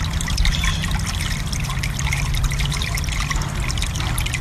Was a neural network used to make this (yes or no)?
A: no